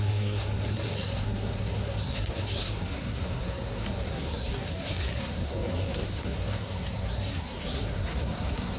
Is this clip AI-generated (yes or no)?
yes